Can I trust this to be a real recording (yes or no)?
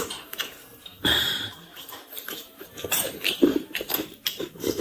no